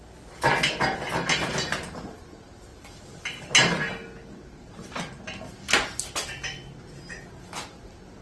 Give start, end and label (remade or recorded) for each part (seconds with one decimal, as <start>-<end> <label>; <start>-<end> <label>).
0.0-8.2 recorded